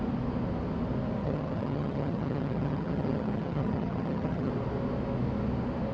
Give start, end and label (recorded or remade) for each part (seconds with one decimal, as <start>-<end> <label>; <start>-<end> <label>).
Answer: 0.0-1.2 recorded; 1.2-4.5 remade; 4.5-5.9 recorded